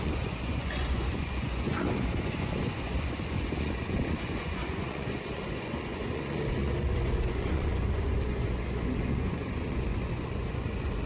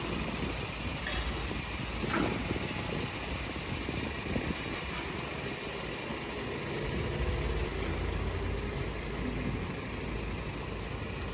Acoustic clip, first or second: second